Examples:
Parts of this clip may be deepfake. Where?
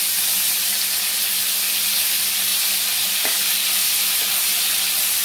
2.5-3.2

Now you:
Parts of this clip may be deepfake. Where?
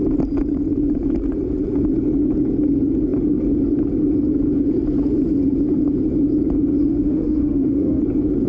6.8-8.0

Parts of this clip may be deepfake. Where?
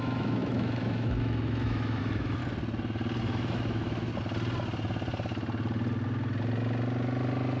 0.0-2.4; 3.2-4.1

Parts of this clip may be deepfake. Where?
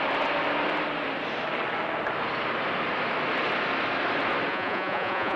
4.5-5.4